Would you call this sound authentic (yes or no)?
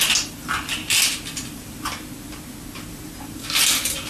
yes